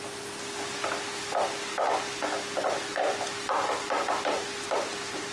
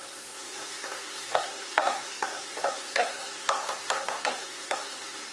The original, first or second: first